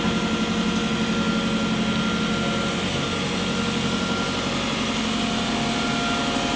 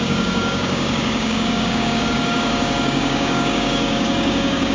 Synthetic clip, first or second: second